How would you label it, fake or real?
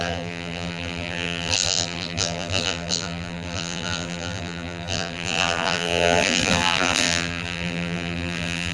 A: fake